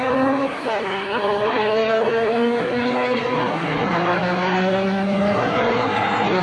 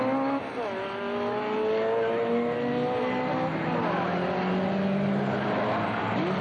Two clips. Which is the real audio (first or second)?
second